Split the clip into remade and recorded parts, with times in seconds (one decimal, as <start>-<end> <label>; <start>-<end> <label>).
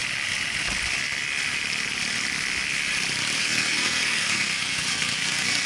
0.0-3.4 recorded; 3.4-5.7 remade